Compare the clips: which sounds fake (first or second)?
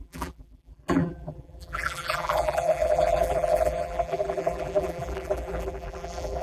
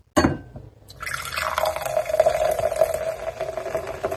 first